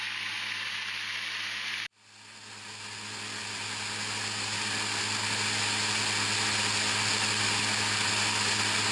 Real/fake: real